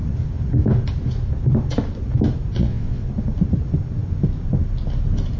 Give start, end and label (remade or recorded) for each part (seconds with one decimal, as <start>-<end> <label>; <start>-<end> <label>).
0.0-2.6 recorded; 2.6-3.1 remade; 3.1-5.4 recorded